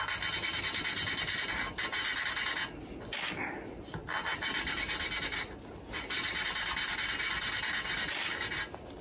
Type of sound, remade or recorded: recorded